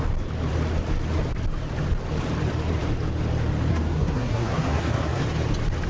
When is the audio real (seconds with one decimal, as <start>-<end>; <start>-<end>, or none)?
0.0-3.7; 5.2-5.9